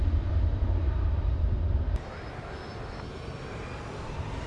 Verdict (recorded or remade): recorded